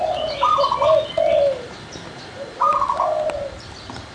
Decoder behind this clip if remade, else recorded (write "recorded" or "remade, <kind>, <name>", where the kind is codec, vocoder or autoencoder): recorded